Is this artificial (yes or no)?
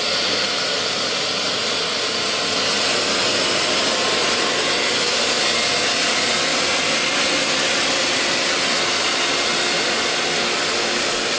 no